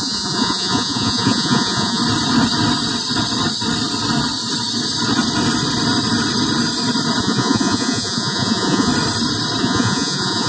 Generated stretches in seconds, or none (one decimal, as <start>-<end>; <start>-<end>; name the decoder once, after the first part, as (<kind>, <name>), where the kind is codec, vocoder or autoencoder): 0.0-2.0 (vocoder, Vocos); 7.2-8.9; 9.6-10.5

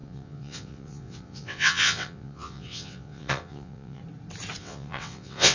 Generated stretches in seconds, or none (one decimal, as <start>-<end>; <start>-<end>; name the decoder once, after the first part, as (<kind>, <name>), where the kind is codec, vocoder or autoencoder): 0.0-4.0 (vocoder, WaveNeXt); 4.6-5.5

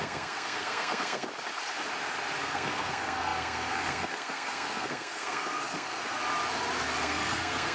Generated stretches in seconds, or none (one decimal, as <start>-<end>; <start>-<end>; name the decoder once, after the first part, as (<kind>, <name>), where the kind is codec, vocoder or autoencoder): 0.0-1.3 (codec, SNAC); 2.4-6.2; 7.0-7.7